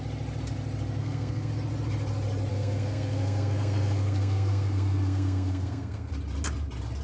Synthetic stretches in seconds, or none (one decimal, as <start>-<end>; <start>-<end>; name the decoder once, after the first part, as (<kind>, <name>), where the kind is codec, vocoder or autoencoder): 1.0-1.5 (codec, SNAC); 2.5-6.1